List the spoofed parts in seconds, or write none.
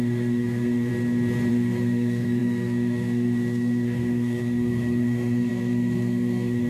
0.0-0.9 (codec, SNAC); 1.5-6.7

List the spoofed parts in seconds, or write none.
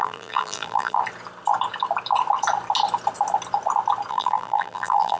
0.0-1.0 (vocoder, BigVGAN v2); 4.1-5.2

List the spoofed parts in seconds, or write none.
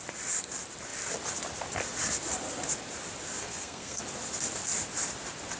3.4-4.0 (codec, SNAC)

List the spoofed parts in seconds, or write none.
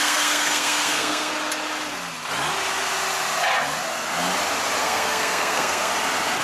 0.0-1.3 (codec, SNAC); 4.8-5.9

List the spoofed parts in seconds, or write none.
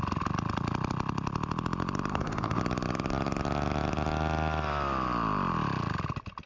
2.1-2.6 (codec, DAC)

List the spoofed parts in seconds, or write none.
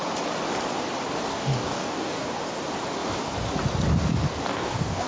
1.3-2.4 (codec, DAC); 4.5-5.1